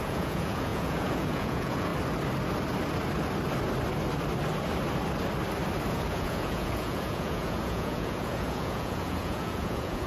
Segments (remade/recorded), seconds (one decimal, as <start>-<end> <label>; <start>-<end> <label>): 0.0-1.9 remade; 1.9-5.9 recorded; 5.9-10.1 remade